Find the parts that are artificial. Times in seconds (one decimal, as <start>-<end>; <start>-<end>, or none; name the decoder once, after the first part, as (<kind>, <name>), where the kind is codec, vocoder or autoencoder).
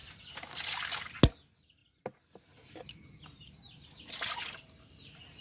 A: none